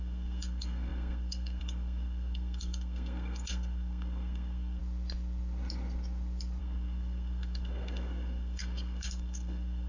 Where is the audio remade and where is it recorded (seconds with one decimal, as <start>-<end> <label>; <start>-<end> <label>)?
0.0-4.8 remade; 4.8-6.6 recorded; 6.6-9.9 remade